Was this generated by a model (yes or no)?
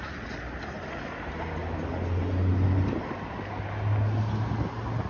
no